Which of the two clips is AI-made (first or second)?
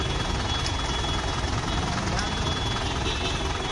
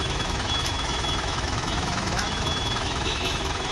second